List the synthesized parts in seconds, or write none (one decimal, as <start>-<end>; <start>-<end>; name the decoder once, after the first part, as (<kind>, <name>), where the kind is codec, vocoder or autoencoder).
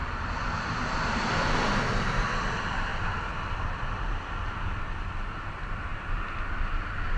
2.3-2.9 (vocoder, BigVGAN v2); 4.2-5.9; 6.5-7.2